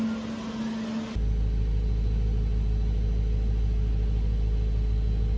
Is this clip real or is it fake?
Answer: real